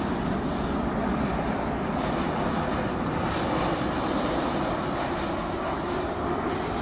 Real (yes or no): yes